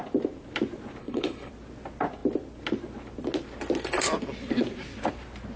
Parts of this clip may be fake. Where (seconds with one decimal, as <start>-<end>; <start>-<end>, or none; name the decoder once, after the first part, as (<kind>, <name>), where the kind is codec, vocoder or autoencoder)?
1.0-1.5 (codec, HILCodec)